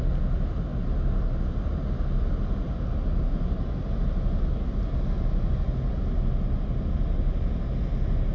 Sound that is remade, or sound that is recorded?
recorded